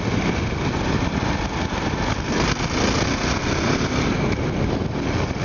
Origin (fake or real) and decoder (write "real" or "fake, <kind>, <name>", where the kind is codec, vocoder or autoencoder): real